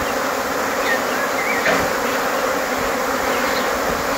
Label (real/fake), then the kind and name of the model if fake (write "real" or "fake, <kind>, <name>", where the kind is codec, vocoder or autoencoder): real